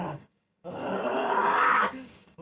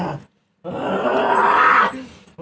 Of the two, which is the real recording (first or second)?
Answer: second